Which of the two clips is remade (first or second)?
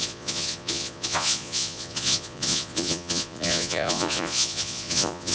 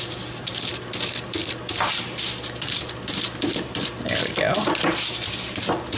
first